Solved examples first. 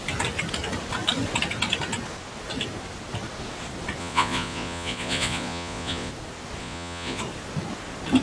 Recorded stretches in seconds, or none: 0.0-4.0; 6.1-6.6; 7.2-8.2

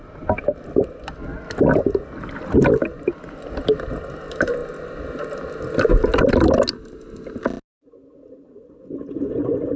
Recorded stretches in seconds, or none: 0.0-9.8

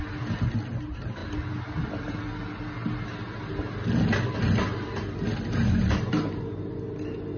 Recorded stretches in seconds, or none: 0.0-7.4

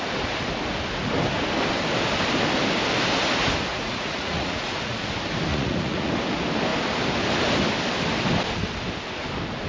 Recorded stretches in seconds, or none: 0.0-3.7; 5.1-5.5; 6.1-9.7

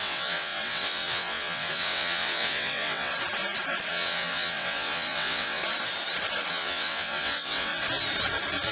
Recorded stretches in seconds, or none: 3.1-3.9; 5.6-6.5; 7.7-8.7